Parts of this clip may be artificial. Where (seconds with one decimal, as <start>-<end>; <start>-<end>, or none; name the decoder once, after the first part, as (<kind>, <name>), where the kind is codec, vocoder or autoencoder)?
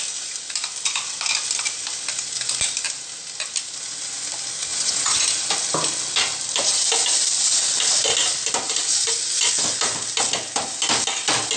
4.7-5.2 (vocoder, WaveNeXt)